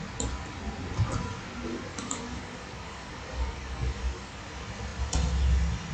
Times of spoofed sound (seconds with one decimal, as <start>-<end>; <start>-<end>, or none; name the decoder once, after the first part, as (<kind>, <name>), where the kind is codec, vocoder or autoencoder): 1.9-4.4 (codec, DAC)